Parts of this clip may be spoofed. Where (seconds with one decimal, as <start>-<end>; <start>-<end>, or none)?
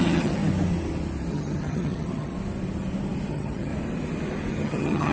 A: 0.0-0.4; 1.3-2.3; 3.3-3.7; 4.5-5.1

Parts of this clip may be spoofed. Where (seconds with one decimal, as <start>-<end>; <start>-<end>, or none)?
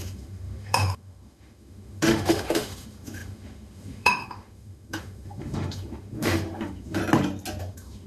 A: 0.0-7.0; 7.6-8.1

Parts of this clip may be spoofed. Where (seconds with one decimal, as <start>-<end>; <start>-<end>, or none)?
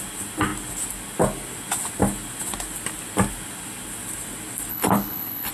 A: 4.7-5.5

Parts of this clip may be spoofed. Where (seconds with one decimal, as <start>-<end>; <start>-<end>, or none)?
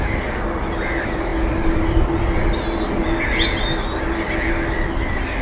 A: none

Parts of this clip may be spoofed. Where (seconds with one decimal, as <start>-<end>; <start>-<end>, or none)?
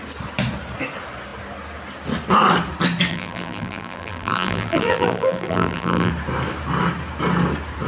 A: 3.1-6.1